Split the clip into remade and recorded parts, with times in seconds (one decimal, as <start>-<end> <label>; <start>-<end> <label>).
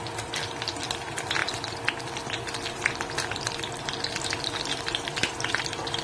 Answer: 0.0-6.0 recorded